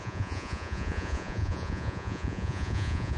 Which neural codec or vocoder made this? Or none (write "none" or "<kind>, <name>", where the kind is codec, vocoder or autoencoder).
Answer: vocoder, Vocos